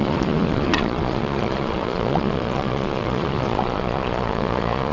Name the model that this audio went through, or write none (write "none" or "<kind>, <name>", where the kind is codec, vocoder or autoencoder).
vocoder, Vocos